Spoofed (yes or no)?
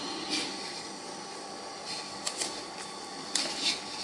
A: no